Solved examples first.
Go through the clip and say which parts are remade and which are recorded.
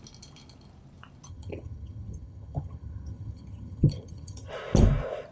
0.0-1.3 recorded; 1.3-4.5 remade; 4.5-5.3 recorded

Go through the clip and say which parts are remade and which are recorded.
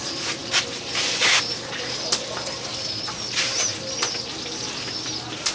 0.0-5.5 recorded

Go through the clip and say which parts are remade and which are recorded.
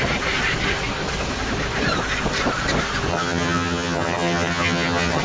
0.0-3.1 recorded; 3.1-5.2 remade